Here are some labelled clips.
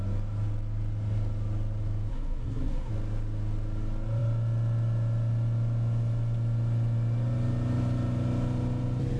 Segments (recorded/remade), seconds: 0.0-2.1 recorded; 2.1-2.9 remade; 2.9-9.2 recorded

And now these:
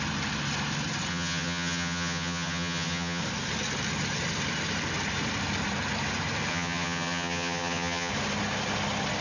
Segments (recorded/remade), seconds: 0.0-1.1 recorded; 1.1-3.2 remade; 3.2-6.5 recorded; 6.5-8.1 remade; 8.1-9.2 recorded